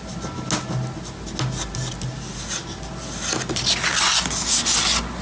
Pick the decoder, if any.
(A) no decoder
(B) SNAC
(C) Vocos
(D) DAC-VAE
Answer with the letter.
A